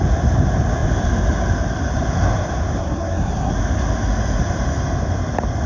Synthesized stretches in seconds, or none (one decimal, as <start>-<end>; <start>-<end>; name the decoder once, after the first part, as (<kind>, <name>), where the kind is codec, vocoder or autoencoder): 2.8-3.5 (codec, SNAC)